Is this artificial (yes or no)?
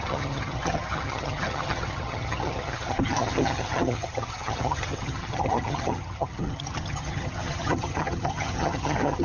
yes